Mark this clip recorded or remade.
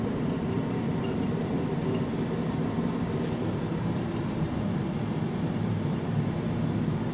remade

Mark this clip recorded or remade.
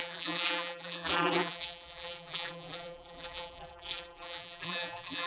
remade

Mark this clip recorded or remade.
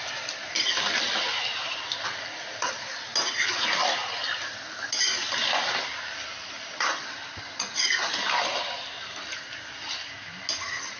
recorded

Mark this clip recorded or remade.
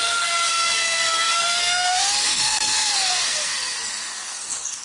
remade